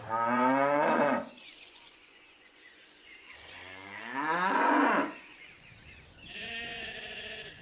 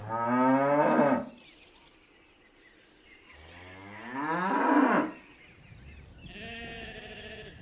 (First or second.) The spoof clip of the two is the first